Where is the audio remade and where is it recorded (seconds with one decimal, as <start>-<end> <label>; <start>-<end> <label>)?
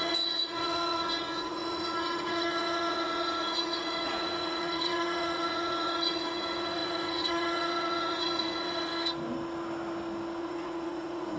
0.0-8.9 remade; 8.9-10.4 recorded; 10.4-11.4 remade